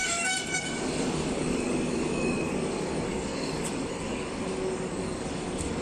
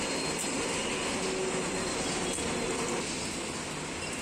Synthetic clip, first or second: first